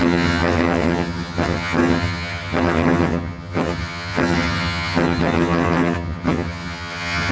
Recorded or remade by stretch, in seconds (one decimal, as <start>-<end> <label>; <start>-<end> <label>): 0.0-7.3 remade